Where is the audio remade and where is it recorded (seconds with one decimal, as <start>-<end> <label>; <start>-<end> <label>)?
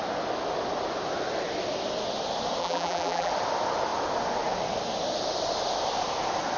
0.0-2.6 recorded; 2.6-3.3 remade; 3.3-6.6 recorded